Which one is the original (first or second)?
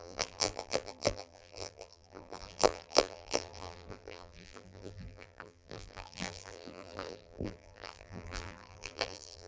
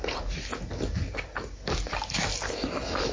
second